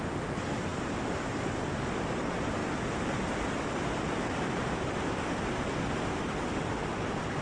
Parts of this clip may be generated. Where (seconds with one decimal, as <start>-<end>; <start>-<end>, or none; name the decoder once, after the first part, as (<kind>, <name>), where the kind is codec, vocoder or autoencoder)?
2.6-5.9 (vocoder, BigVGAN v2)